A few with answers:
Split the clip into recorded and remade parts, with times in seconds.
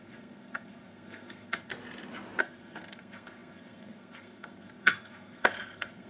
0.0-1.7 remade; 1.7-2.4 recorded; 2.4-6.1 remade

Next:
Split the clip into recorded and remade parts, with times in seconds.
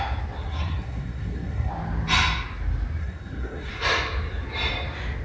0.0-0.4 recorded; 0.4-1.7 remade; 1.7-3.0 recorded; 3.0-3.7 remade; 3.7-5.2 recorded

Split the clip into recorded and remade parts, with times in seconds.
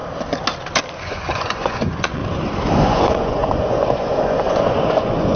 0.0-1.0 recorded; 1.0-2.2 remade; 2.2-2.8 recorded; 2.8-5.4 remade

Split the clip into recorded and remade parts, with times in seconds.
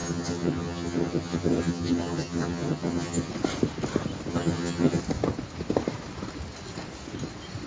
0.0-3.3 remade; 3.3-4.3 recorded; 4.3-5.0 remade; 5.0-7.7 recorded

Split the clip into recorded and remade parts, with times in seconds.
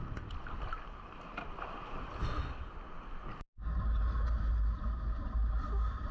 0.0-6.1 recorded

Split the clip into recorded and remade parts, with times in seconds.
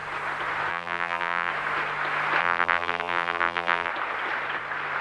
0.0-0.7 recorded; 0.7-1.5 remade; 1.5-2.4 recorded; 2.4-3.9 remade; 3.9-5.0 recorded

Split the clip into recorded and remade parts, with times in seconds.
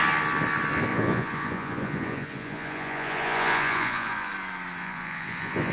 0.0-0.9 recorded; 0.9-4.3 remade; 4.3-4.8 recorded; 4.8-5.7 remade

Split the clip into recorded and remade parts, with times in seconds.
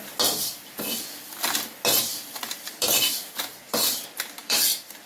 0.0-2.1 recorded; 2.1-4.0 remade; 4.0-4.4 recorded; 4.4-5.1 remade